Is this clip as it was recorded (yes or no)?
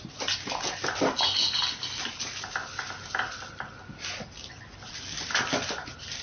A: yes